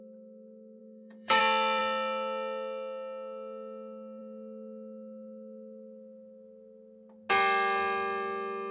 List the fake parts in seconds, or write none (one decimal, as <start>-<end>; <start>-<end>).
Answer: 0.8-1.4